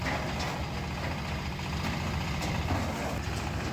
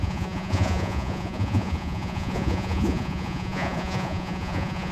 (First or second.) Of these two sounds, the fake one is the second